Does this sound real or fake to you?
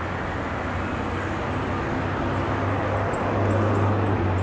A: real